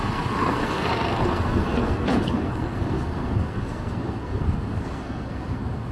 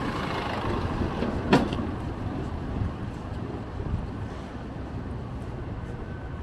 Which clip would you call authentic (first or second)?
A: second